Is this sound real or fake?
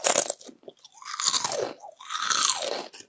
real